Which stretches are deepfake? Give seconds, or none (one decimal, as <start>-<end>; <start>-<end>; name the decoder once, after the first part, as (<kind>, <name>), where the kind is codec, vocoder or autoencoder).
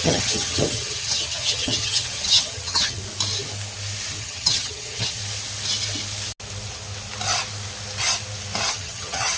0.0-3.0 (vocoder, HiFi-GAN); 4.2-5.2; 8.7-9.4